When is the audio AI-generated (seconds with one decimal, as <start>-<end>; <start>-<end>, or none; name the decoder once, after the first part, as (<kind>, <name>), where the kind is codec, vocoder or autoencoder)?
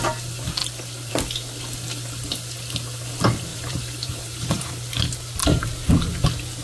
3.5-4.7 (vocoder, BigVGAN v2); 5.4-6.1